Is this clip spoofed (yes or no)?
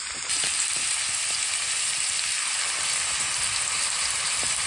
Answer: no